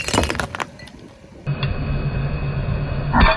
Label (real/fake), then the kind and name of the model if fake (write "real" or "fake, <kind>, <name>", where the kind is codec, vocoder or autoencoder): real